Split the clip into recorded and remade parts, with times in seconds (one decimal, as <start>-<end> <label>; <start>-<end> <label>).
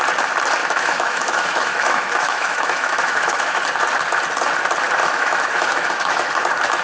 0.0-0.6 recorded; 0.6-3.6 remade; 3.6-5.0 recorded; 5.0-6.3 remade; 6.3-6.8 recorded